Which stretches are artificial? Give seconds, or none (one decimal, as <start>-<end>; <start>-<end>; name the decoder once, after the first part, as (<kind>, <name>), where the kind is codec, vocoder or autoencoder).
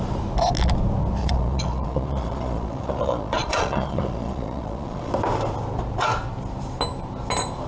1.2-5.1 (vocoder, Vocos)